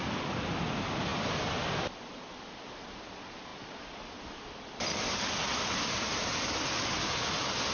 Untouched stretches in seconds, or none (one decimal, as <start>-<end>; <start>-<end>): 0.0-7.7